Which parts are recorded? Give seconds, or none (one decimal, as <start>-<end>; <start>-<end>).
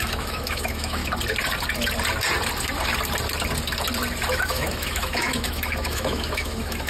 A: 1.0-4.3